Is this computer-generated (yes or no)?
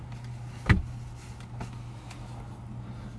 no